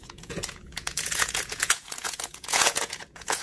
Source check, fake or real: fake